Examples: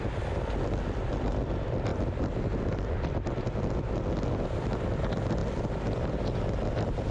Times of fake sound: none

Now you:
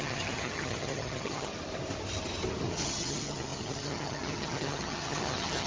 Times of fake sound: 0.0-1.5 (vocoder, HiFi-GAN); 2.7-5.7

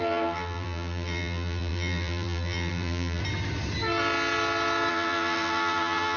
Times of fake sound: 0.0-3.2 (vocoder, BigVGAN v2); 4.9-6.2

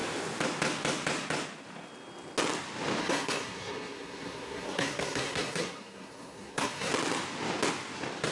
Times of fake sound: 3.0-6.9 (codec, SNAC)

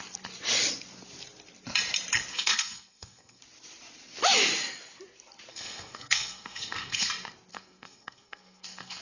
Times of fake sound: 2.3-3.4 (codec, SNAC); 5.5-7.1; 7.5-9.0

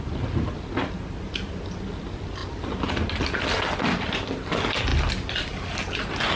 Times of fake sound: none

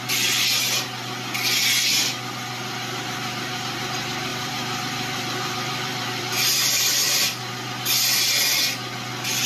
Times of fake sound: 4.3-7.5 (vocoder, BigVGAN v2)